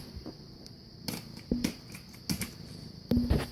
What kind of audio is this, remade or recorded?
recorded